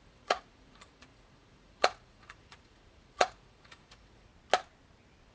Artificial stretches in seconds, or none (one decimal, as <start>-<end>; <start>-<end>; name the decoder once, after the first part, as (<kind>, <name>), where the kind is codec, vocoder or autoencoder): 0.0-4.3 (vocoder, Vocos)

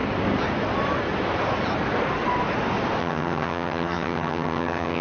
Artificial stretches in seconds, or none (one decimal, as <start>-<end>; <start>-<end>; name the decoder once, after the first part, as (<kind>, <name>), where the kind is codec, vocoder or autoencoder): 3.0-5.0 (vocoder, HiFi-GAN)

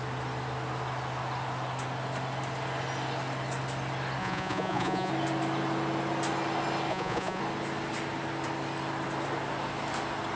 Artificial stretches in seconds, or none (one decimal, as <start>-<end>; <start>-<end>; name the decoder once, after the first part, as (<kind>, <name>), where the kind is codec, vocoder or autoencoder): 4.2-5.1 (vocoder, Vocos); 6.9-7.4

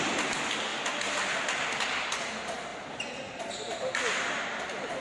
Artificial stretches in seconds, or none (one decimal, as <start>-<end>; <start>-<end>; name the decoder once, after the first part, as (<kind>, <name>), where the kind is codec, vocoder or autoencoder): none

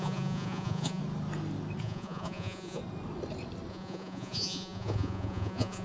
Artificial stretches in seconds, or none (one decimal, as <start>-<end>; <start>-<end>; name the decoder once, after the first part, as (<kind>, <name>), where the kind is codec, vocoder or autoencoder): 0.0-1.0 (vocoder, Vocos); 1.8-2.8; 3.7-5.8

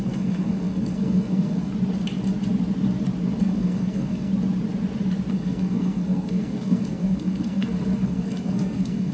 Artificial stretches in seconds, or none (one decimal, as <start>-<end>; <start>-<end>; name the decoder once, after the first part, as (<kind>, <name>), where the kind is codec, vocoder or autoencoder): 0.0-1.7 (codec, SNAC); 3.4-4.3; 5.3-9.1

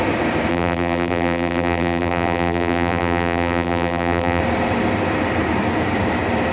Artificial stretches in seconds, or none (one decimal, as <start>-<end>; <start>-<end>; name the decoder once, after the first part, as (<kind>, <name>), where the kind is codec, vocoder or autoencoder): 0.5-4.4 (vocoder, BigVGAN v2)